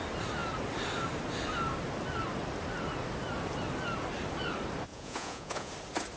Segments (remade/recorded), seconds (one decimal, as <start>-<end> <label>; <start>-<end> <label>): 0.0-4.9 recorded; 4.9-5.7 remade; 5.7-6.2 recorded